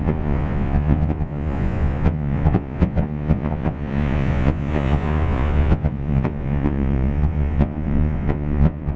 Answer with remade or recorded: remade